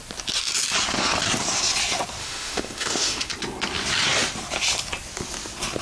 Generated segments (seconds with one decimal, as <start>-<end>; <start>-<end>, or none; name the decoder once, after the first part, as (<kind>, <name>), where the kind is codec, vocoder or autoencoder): 2.2-3.3 (autoencoder, DAC-VAE)